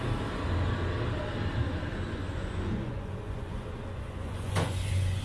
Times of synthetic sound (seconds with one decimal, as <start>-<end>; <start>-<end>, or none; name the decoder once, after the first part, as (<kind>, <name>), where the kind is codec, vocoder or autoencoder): 1.9-5.2 (vocoder, Vocos)